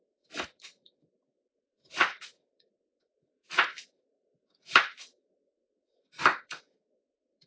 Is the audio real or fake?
fake